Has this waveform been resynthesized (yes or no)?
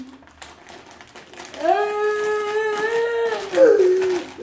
no